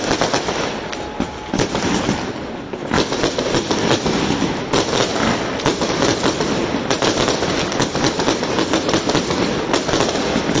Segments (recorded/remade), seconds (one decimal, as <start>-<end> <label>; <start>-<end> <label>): 0.0-10.6 recorded

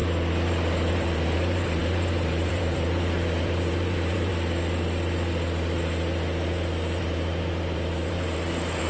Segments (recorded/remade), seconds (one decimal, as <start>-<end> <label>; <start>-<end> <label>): 0.0-0.9 recorded; 0.9-4.3 remade; 4.3-7.0 recorded; 7.0-8.9 remade

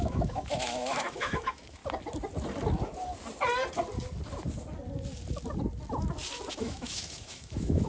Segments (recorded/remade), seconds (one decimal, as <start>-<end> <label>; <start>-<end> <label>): 0.0-1.8 remade; 1.8-6.5 recorded; 6.5-7.9 remade